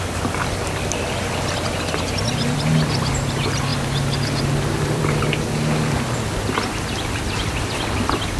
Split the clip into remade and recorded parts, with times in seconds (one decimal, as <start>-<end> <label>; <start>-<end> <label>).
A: 0.0-3.7 remade; 3.7-4.4 recorded; 4.4-8.4 remade